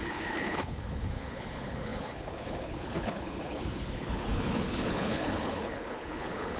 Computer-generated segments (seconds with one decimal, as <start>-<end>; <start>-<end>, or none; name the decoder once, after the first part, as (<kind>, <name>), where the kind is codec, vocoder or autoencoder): 0.0-6.6 (codec, HILCodec)